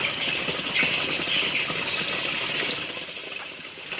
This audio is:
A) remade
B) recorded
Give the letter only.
B